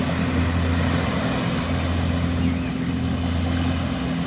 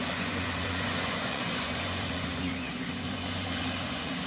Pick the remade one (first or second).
second